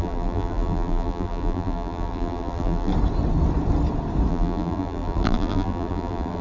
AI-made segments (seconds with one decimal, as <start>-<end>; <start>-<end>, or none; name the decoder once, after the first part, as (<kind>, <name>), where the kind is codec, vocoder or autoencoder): 0.0-2.9 (vocoder, BigVGAN v2); 4.3-6.4